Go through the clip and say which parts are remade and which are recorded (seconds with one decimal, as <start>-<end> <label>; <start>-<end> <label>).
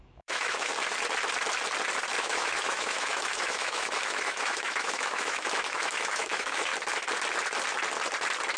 0.0-0.7 remade; 0.7-2.2 recorded; 2.2-6.7 remade; 6.7-8.6 recorded